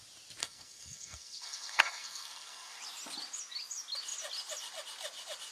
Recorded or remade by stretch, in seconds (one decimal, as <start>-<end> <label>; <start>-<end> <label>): 0.0-0.4 recorded; 0.4-2.8 remade; 2.8-5.5 recorded